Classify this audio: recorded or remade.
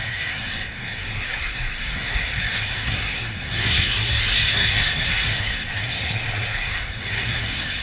remade